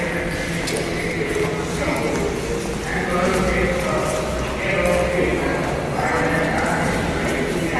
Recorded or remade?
recorded